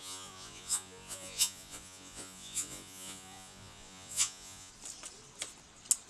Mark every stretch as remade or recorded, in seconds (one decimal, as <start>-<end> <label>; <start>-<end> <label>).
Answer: 0.0-4.7 remade; 4.7-6.1 recorded